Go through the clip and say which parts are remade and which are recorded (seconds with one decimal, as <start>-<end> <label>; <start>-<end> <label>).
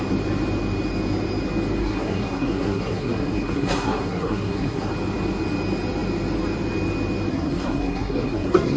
0.0-1.8 recorded; 1.8-4.9 remade; 4.9-7.3 recorded; 7.3-8.8 remade